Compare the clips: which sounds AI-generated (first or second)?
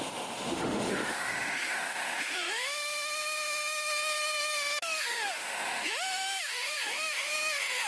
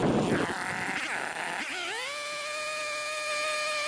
first